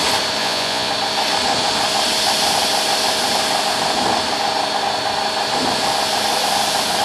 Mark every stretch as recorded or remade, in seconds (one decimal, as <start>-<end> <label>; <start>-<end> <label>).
0.0-0.4 recorded; 0.4-0.9 remade; 0.9-7.0 recorded